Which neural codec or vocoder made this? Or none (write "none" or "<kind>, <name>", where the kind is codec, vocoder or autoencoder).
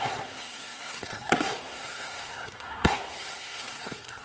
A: codec, SNAC